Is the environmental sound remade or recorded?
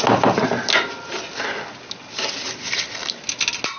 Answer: recorded